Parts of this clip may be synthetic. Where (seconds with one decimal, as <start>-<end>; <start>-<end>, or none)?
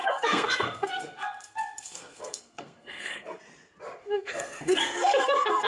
0.0-3.4; 4.0-5.7